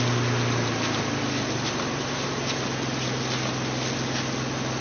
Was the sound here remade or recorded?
recorded